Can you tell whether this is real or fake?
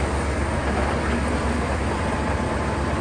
real